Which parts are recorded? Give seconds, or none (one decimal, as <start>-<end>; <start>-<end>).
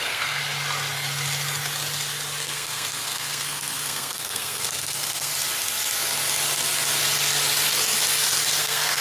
0.4-2.4; 5.3-8.6